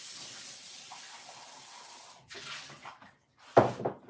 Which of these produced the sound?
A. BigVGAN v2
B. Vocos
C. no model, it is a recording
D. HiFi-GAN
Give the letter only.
C